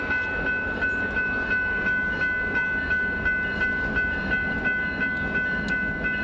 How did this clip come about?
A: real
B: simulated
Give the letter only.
A